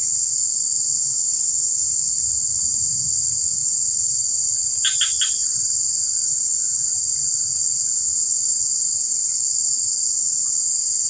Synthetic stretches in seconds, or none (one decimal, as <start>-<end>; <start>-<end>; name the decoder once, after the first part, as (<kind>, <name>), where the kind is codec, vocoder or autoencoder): none